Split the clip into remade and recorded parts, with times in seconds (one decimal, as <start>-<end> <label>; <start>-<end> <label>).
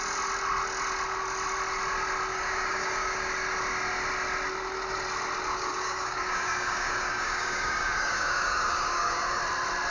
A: 0.0-2.3 recorded; 2.3-3.3 remade; 3.3-5.5 recorded; 5.5-9.4 remade; 9.4-9.9 recorded